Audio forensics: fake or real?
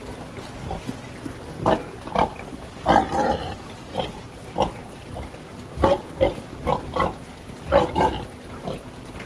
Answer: real